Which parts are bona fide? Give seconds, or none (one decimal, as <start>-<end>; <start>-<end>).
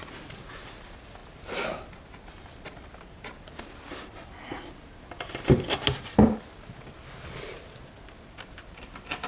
0.0-9.3